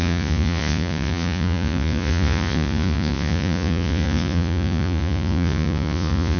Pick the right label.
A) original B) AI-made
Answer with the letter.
B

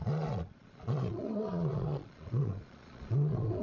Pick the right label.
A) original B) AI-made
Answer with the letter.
B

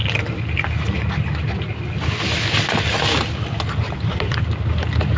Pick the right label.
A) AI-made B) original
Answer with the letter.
B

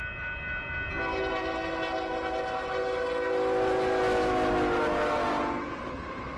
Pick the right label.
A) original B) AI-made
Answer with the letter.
A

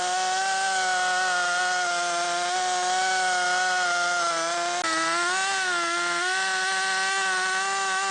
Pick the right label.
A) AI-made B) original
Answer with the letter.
B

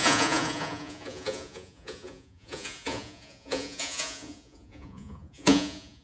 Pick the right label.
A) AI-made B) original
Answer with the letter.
A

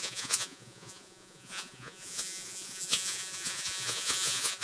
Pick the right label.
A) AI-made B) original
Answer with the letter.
A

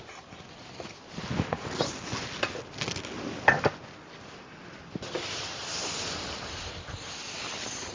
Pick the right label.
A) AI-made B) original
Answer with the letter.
B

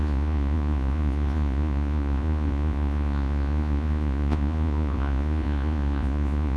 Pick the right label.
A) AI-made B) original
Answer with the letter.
A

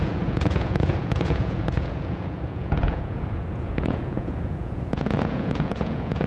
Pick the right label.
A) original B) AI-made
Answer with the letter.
B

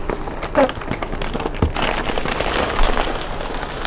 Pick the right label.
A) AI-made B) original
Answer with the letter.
B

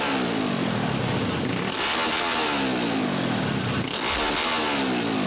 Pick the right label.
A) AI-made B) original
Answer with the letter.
B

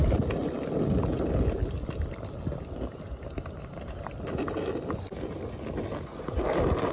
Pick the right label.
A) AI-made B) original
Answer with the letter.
B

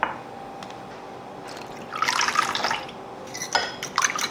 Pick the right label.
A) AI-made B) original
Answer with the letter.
B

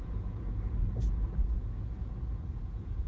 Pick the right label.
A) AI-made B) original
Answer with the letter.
A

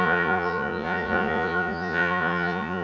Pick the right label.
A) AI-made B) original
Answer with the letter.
A